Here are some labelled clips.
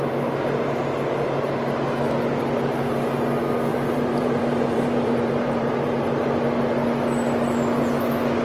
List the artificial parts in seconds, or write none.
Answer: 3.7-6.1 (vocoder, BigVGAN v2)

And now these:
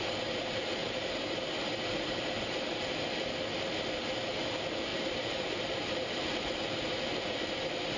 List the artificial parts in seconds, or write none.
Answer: 0.8-1.5 (vocoder, BigVGAN v2); 4.9-6.3

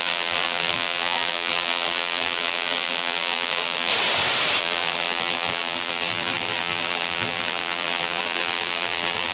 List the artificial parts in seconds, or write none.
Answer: 0.0-3.9 (vocoder, BigVGAN v2); 4.6-9.3

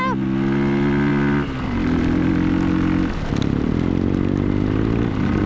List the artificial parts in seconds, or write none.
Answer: none

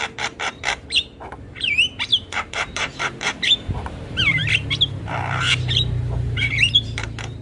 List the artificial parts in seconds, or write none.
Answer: 0.0-4.4 (vocoder, BigVGAN v2); 5.0-7.4